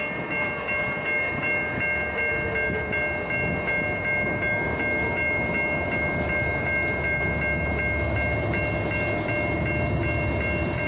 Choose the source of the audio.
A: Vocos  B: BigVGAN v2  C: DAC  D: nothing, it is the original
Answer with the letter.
D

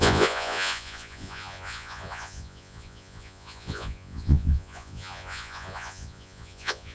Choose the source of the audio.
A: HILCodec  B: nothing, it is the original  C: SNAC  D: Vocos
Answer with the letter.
D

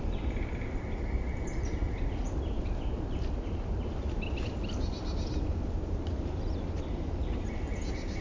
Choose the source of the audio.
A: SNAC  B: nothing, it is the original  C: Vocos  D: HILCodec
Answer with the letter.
B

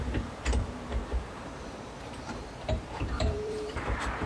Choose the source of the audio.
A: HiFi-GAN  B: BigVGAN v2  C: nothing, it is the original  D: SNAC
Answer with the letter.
B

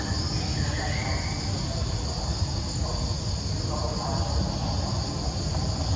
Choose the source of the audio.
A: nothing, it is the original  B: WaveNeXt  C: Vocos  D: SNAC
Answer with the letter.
A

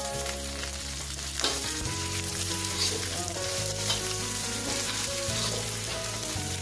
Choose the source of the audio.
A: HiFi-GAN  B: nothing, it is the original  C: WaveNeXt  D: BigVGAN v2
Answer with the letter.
D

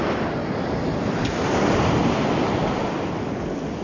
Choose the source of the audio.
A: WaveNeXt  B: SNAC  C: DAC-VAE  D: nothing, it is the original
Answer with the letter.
D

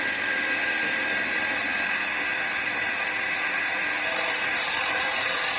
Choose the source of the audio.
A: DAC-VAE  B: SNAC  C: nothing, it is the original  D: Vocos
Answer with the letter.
C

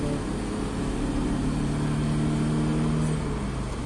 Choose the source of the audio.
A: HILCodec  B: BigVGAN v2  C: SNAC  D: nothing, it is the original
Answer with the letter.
D